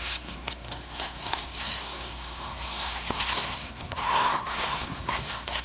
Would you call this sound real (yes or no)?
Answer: no